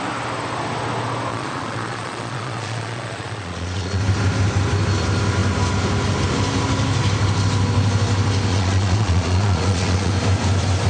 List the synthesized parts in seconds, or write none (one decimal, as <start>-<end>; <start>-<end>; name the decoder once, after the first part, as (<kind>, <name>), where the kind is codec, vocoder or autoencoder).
1.3-4.0 (vocoder, Vocos); 8.5-10.1